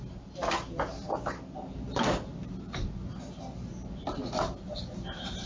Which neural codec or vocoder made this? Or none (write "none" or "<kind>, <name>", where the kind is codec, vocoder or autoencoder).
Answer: none